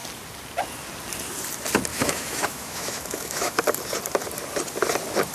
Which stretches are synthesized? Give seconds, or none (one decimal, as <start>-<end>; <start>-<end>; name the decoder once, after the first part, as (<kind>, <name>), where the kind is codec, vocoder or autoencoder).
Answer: 1.9-3.6 (autoencoder, DAC-VAE)